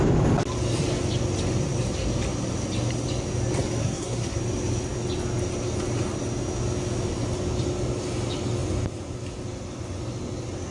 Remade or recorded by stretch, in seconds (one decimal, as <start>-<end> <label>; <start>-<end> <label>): 0.0-3.8 recorded; 3.8-4.4 remade; 4.4-10.7 recorded